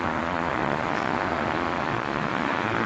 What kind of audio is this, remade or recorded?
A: remade